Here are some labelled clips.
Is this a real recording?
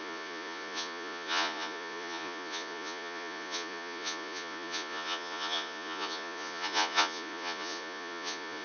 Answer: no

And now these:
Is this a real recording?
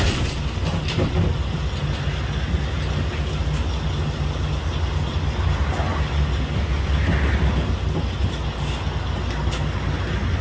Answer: yes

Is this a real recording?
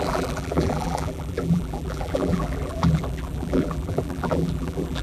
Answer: no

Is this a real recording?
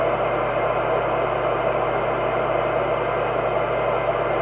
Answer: yes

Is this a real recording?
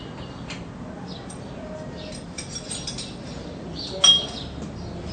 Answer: yes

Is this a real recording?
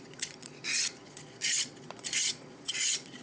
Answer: no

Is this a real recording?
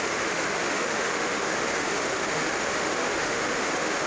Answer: no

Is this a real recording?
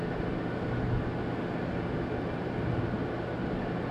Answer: yes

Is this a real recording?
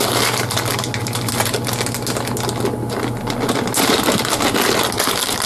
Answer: yes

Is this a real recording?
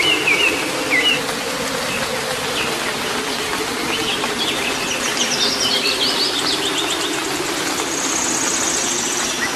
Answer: yes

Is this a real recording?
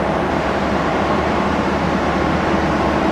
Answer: no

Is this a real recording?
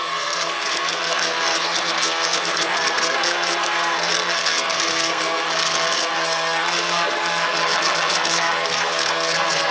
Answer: no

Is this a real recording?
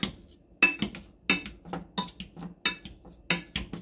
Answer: yes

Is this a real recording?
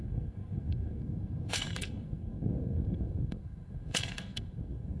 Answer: no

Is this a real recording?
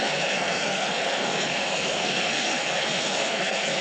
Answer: no